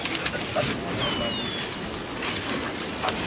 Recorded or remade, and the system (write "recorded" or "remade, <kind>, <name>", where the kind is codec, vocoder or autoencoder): recorded